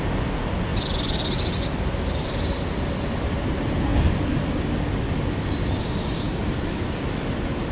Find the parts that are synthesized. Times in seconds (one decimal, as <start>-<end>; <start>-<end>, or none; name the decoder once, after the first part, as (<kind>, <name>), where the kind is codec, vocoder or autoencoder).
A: 0.7-1.5 (vocoder, BigVGAN v2); 3.9-4.6; 6.4-7.3